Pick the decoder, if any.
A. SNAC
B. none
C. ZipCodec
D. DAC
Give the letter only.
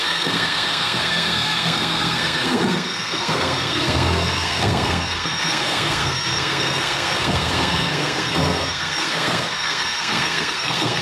A